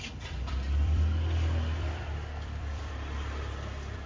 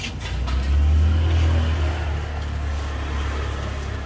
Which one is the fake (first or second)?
first